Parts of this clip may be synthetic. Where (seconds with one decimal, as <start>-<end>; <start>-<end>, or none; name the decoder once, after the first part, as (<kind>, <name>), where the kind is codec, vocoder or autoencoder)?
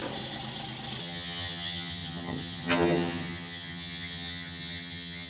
1.0-5.3 (vocoder, HiFi-GAN)